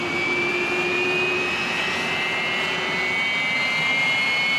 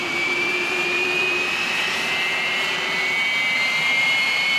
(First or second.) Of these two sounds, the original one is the first